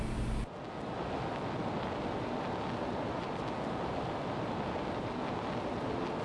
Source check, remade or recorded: recorded